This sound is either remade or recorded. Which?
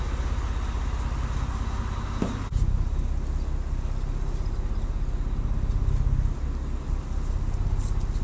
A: recorded